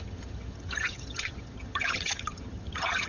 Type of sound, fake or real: fake